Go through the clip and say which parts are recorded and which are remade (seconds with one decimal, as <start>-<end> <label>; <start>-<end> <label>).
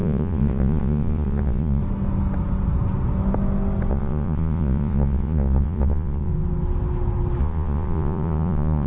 0.0-1.8 remade; 1.8-3.9 recorded; 3.9-6.3 remade; 6.3-7.4 recorded; 7.4-8.9 remade